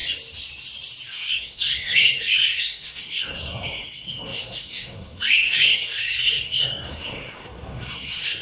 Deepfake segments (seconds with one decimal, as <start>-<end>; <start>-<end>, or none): 1.1-8.4